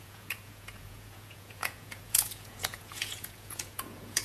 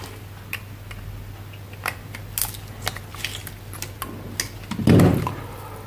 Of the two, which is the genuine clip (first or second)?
second